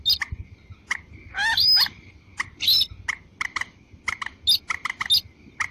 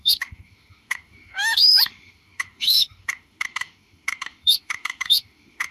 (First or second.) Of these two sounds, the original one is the first